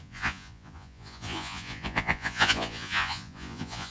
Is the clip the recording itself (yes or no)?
no